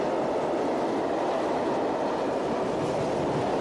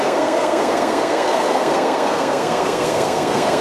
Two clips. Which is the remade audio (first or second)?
second